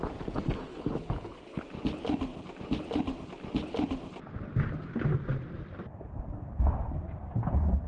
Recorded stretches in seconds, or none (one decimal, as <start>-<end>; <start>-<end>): 0.0-0.7; 1.6-7.9